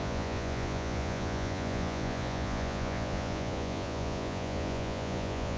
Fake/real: fake